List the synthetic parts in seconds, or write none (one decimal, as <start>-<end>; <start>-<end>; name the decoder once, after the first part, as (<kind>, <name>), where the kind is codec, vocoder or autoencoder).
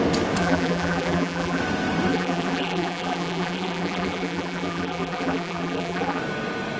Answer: 0.4-1.6 (vocoder, BigVGAN v2); 2.1-6.2